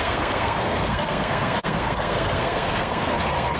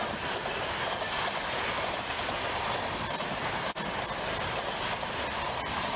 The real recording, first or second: second